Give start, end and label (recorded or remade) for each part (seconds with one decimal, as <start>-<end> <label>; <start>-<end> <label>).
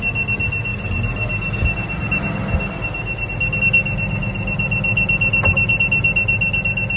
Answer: 0.0-7.0 recorded